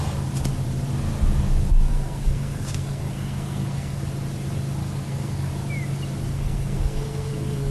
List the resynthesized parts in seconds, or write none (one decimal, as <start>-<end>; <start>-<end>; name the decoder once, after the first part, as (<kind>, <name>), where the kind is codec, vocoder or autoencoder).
1.9-4.0 (codec, SNAC); 4.8-5.5; 6.3-7.7